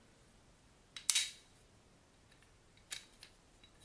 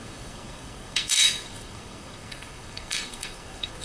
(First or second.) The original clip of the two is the first